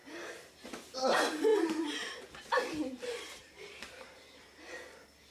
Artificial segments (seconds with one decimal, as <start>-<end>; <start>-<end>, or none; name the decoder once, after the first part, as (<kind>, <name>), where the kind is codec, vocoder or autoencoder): 0.0-0.5 (vocoder, BigVGAN v2); 1.5-4.7